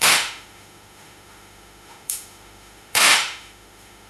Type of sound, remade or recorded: remade